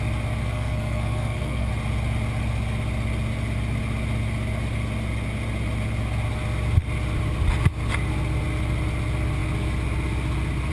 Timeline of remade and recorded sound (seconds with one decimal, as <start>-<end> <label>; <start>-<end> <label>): 0.0-0.4 recorded; 0.4-1.7 remade; 1.7-10.7 recorded